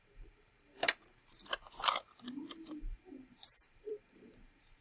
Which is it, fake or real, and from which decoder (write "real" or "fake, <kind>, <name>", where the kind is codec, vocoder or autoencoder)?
fake, vocoder, BigVGAN v2